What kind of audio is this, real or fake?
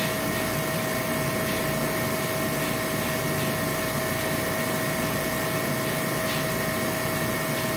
real